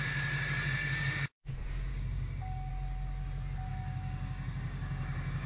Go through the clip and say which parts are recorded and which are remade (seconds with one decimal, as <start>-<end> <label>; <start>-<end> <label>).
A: 0.0-0.8 recorded; 0.8-1.5 remade; 1.5-1.9 recorded; 1.9-2.7 remade; 2.7-3.7 recorded; 3.7-5.5 remade